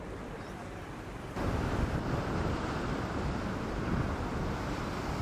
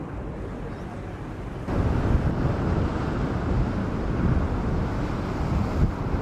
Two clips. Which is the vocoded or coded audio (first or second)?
first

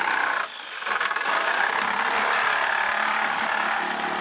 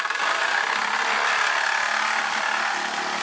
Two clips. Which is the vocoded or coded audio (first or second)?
first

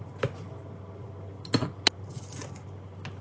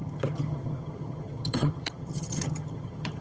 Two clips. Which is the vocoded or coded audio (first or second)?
second